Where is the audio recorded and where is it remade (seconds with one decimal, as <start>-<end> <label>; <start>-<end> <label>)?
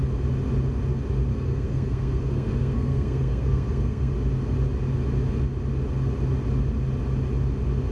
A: 0.0-1.3 recorded; 1.3-4.1 remade; 4.1-7.9 recorded